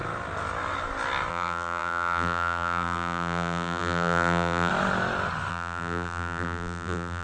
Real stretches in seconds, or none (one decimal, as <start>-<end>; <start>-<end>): 0.0-1.3; 4.7-5.5

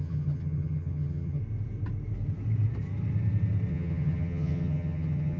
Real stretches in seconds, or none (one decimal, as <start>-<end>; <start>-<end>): 1.4-3.7